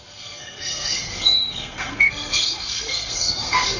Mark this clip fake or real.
fake